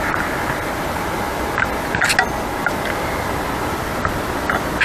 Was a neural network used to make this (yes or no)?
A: no